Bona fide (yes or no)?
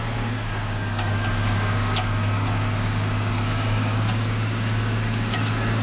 no